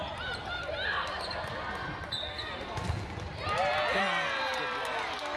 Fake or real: real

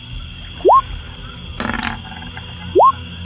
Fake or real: real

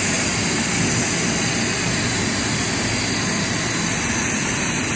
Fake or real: real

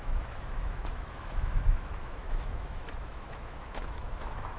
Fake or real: fake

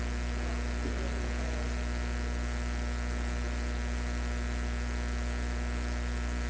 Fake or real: real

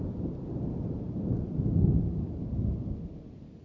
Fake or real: real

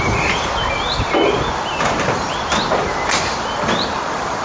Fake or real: real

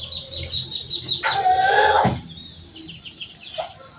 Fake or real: real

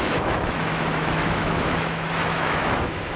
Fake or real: fake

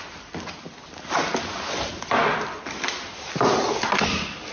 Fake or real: real